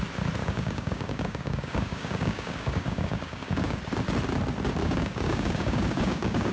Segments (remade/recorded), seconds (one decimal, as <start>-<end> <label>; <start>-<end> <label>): 0.0-0.4 recorded; 0.4-3.8 remade; 3.8-4.8 recorded; 4.8-6.5 remade

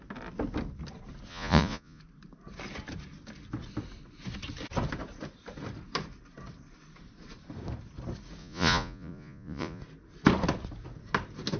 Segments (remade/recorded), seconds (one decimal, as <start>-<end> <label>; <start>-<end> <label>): 0.0-1.3 recorded; 1.3-2.0 remade; 2.0-8.4 recorded; 8.4-9.8 remade; 9.8-11.6 recorded

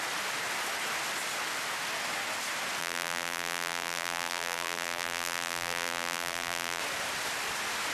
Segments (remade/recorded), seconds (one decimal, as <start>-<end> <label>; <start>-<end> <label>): 0.0-2.8 recorded; 2.8-6.8 remade; 6.8-7.9 recorded

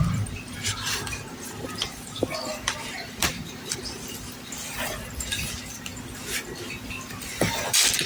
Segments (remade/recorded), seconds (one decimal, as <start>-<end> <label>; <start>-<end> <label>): 0.0-5.9 remade; 5.9-7.2 recorded; 7.2-8.1 remade

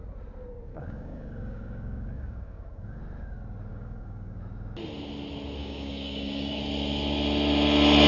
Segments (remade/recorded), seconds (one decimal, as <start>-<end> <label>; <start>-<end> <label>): 0.0-0.7 recorded; 0.7-3.0 remade; 3.0-3.7 recorded; 3.7-4.4 remade; 4.4-5.6 recorded; 5.6-6.6 remade; 6.6-8.1 recorded

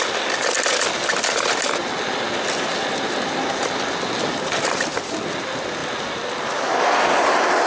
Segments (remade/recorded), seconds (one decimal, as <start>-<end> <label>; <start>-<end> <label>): 0.0-7.7 recorded

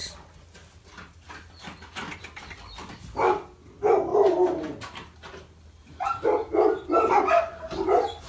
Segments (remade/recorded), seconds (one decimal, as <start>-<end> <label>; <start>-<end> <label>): 0.0-8.3 recorded